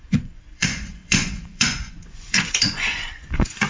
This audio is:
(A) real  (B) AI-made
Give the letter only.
B